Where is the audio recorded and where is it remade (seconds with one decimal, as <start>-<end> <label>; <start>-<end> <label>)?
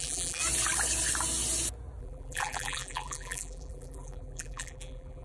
0.0-0.4 remade; 0.4-2.0 recorded; 2.0-5.2 remade